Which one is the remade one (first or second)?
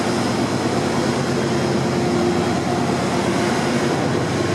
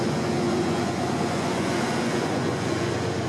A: second